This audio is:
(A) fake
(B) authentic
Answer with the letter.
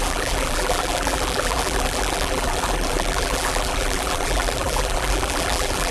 A